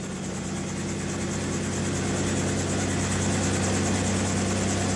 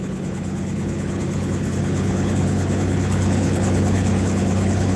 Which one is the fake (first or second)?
second